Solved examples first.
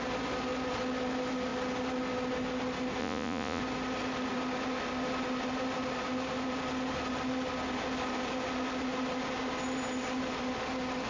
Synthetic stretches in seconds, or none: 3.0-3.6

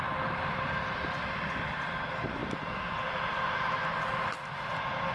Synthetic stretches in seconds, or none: none

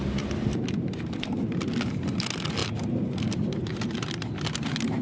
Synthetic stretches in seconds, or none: 2.6-3.8

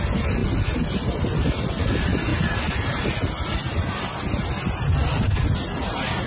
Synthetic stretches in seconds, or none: 0.4-1.7; 2.3-3.0

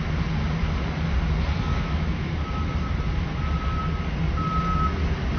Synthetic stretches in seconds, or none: 1.7-2.4